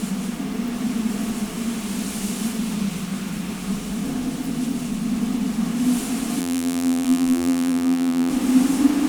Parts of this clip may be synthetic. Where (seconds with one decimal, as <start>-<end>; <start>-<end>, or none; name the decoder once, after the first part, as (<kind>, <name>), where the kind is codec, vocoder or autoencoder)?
6.4-8.3 (vocoder, BigVGAN v2)